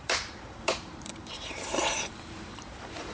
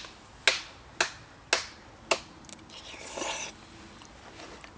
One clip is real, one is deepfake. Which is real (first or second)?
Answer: second